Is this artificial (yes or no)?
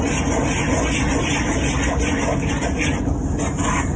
no